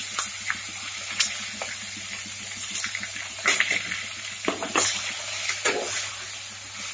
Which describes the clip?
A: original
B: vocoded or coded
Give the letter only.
A